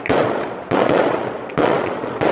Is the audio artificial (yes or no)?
yes